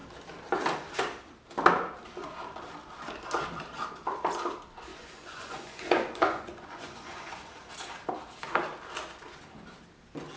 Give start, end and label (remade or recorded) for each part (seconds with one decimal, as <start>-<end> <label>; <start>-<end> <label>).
0.0-4.9 recorded; 4.9-7.7 remade; 7.7-10.4 recorded